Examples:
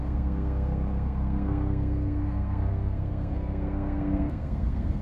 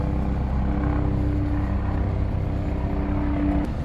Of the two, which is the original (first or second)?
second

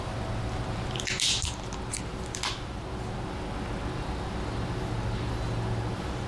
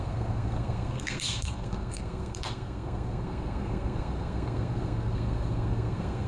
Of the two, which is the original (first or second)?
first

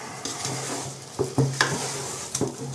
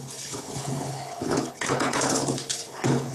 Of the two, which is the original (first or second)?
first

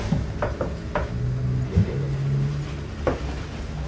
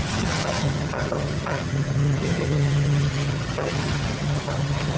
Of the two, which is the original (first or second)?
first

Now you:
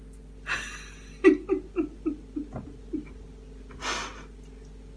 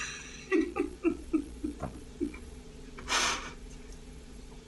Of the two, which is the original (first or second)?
first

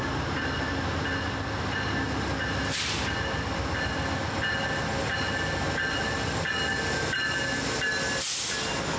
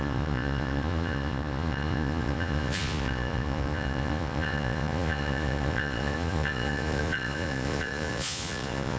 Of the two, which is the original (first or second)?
first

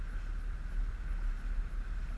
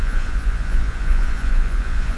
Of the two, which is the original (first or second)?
first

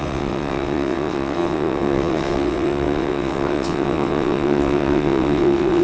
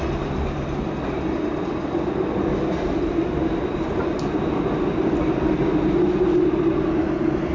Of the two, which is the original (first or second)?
second